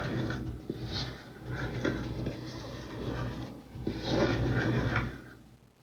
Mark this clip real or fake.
real